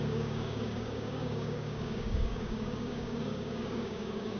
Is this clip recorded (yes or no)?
no